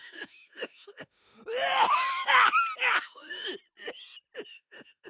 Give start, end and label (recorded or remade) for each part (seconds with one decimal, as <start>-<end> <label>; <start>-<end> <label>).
0.0-1.4 remade; 1.4-2.9 recorded; 2.9-3.5 remade; 3.5-4.5 recorded; 4.5-5.1 remade

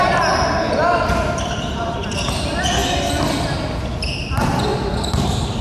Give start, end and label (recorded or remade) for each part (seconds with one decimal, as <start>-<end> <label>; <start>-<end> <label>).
0.0-0.6 recorded; 0.6-2.8 remade; 2.8-4.2 recorded; 4.2-4.7 remade; 4.7-5.6 recorded

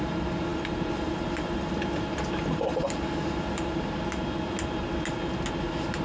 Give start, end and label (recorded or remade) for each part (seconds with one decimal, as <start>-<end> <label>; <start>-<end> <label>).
0.0-6.0 recorded

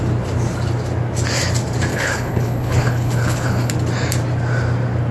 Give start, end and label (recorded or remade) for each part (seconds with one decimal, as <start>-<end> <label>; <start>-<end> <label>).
0.0-1.9 recorded; 1.9-3.7 remade; 3.7-5.1 recorded

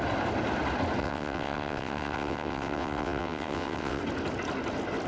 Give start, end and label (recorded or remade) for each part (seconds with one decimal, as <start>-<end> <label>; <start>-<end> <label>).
0.0-1.0 recorded; 1.0-4.0 remade; 4.0-5.1 recorded

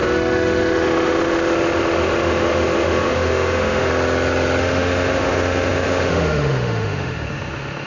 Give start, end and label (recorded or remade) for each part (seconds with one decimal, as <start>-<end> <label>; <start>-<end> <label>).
0.0-3.9 remade; 3.9-4.6 recorded; 4.6-7.9 remade

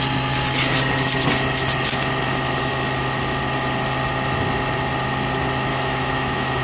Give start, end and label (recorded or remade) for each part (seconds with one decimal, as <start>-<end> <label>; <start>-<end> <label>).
0.0-5.7 recorded; 5.7-6.6 remade